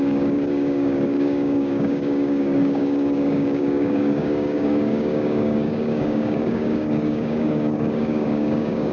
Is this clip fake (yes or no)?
yes